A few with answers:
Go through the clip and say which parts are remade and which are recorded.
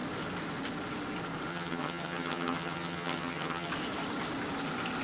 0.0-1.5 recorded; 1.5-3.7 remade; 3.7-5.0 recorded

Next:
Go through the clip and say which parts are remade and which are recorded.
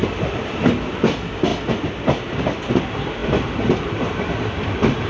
0.0-0.6 remade; 0.6-3.2 recorded; 3.2-5.1 remade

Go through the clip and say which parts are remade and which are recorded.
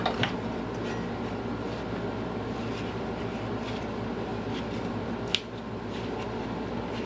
0.0-7.1 recorded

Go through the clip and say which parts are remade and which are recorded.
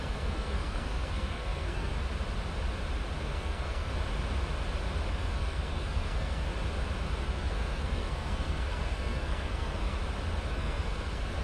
0.0-1.9 remade; 1.9-3.2 recorded; 3.2-3.9 remade; 3.9-5.1 recorded; 5.1-6.5 remade; 6.5-7.2 recorded; 7.2-10.0 remade; 10.0-10.5 recorded; 10.5-11.4 remade